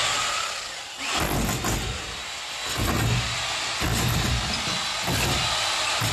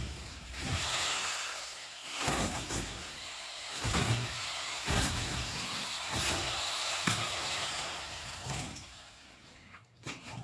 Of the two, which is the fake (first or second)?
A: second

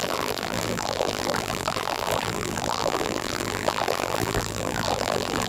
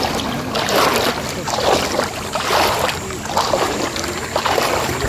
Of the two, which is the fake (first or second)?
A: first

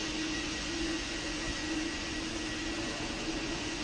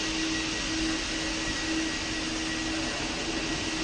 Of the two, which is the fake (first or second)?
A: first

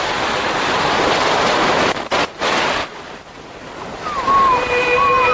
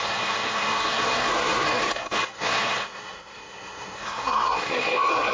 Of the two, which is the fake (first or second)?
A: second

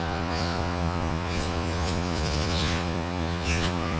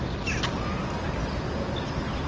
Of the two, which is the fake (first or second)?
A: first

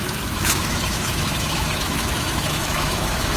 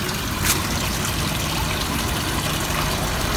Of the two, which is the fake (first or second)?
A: first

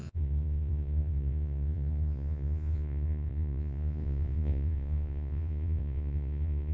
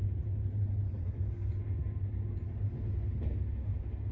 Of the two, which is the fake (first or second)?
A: first